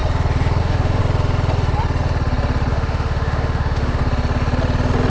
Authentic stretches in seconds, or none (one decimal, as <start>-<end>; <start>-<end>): 0.0-0.6; 1.0-2.7; 4.0-5.1